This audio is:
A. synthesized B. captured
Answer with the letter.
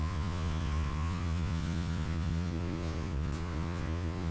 A